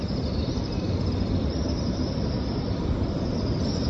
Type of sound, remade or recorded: remade